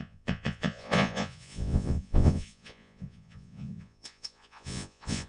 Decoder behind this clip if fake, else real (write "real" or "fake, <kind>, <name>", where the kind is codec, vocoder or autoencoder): fake, vocoder, Vocos